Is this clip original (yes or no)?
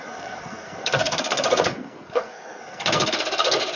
no